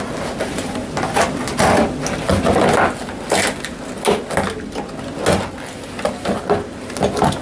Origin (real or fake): real